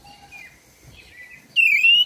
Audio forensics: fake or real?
real